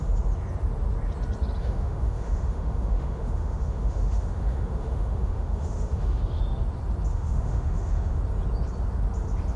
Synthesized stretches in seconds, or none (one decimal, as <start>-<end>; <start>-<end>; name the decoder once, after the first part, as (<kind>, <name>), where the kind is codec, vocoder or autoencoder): 1.6-6.4 (autoencoder, DAC-VAE); 7.1-8.2